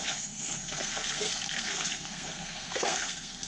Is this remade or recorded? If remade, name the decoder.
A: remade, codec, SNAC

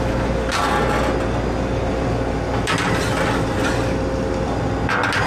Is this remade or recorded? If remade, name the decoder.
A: recorded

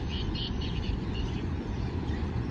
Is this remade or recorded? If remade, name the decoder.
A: remade, vocoder, Vocos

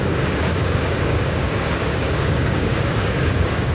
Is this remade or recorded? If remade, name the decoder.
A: remade, codec, DAC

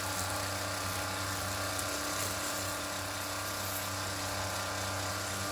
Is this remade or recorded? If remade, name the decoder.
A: recorded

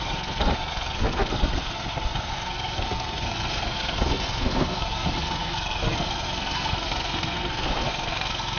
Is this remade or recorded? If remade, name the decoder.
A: remade, codec, SNAC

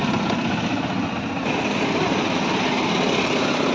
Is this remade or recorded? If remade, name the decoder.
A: recorded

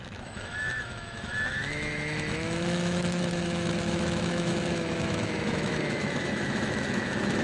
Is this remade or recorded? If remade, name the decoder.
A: remade, autoencoder, DAC-VAE